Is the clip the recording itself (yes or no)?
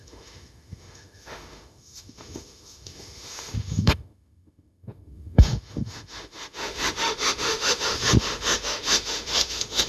no